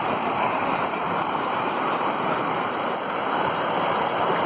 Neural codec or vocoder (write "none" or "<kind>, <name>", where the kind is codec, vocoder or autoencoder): vocoder, BigVGAN v2